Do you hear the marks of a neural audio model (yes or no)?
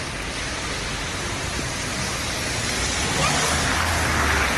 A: no